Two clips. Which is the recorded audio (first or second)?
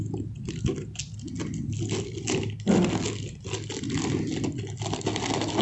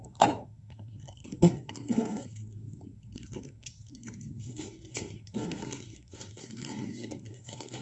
first